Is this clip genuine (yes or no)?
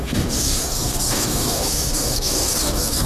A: no